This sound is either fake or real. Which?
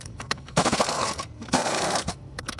fake